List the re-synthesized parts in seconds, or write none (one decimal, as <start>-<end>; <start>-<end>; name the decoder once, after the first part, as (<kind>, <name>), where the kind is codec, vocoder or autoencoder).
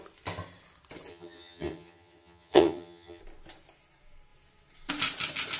1.1-3.2 (vocoder, HiFi-GAN)